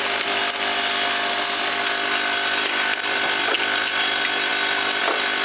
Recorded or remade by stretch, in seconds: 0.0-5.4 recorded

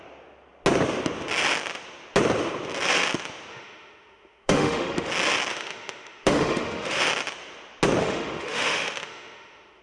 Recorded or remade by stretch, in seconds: 0.0-3.5 recorded; 3.5-5.1 remade; 5.1-5.5 recorded; 5.5-7.0 remade; 7.0-8.0 recorded; 8.0-9.8 remade

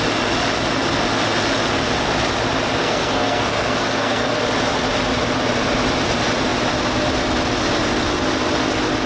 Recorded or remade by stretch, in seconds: 0.0-2.8 recorded; 2.8-4.4 remade; 4.4-9.1 recorded

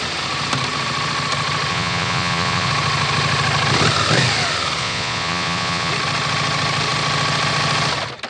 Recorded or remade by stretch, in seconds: 0.0-1.7 recorded; 1.7-2.7 remade; 2.7-4.8 recorded; 4.8-5.9 remade; 5.9-8.3 recorded

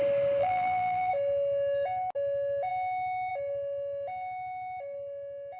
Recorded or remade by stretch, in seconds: 0.0-0.4 recorded; 0.4-1.1 remade; 1.1-5.6 recorded